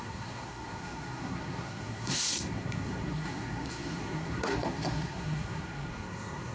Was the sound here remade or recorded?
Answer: remade